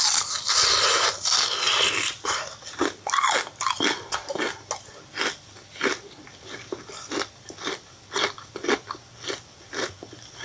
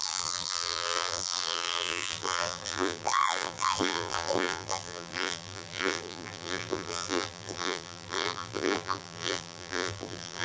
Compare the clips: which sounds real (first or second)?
first